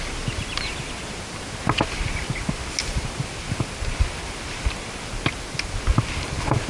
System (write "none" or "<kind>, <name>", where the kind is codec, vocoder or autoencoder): none